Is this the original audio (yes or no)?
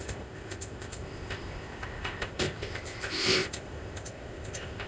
no